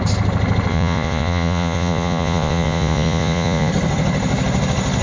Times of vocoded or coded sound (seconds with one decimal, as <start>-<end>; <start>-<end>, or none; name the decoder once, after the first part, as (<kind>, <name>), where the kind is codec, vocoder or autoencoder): 0.7-3.7 (vocoder, Vocos)